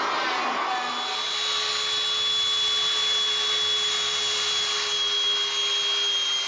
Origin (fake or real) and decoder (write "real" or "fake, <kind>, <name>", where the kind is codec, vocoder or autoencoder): real